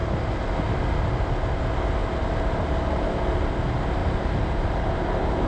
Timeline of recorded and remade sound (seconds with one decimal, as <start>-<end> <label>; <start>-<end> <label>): 0.0-4.0 recorded; 4.0-5.5 remade